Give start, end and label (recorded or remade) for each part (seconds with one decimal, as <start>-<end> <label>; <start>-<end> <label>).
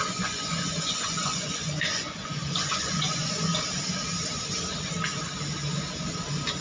0.0-3.5 remade; 3.5-6.6 recorded